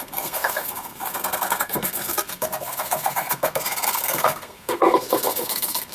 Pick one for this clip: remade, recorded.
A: remade